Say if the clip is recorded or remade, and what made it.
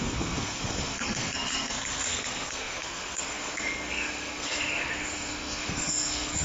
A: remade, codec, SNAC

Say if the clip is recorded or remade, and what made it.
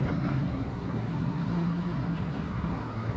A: remade, codec, SNAC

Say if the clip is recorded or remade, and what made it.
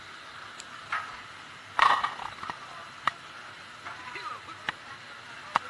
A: recorded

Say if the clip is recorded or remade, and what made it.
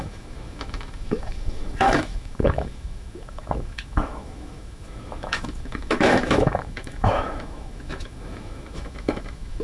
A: remade, autoencoder, DAC-VAE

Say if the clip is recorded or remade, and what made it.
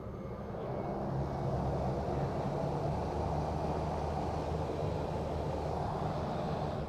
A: recorded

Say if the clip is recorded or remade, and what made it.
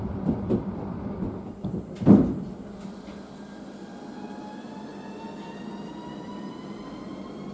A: remade, vocoder, BigVGAN v2